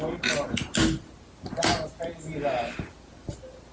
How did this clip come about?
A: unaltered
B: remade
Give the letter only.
A